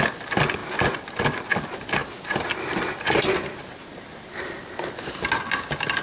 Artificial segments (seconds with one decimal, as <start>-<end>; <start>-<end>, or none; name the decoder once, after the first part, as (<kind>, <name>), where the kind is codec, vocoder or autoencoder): 2.0-2.8 (vocoder, BigVGAN v2)

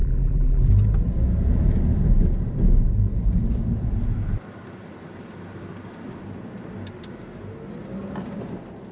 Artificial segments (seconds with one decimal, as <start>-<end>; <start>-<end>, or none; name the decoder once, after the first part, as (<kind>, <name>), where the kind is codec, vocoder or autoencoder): 0.0-0.7 (vocoder, BigVGAN v2)

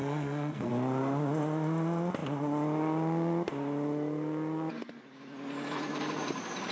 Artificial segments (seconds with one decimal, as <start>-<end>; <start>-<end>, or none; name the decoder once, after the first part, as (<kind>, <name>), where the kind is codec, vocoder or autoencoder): 0.0-0.7 (codec, SNAC)

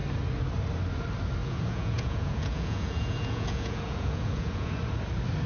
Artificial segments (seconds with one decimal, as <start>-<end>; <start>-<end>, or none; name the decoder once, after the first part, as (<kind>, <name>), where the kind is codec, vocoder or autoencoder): 1.4-4.7 (vocoder, Vocos)